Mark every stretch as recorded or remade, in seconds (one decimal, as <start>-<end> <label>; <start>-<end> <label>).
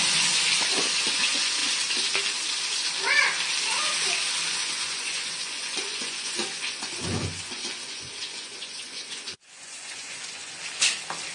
0.0-1.6 remade; 1.6-4.5 recorded; 4.5-10.6 remade; 10.6-11.3 recorded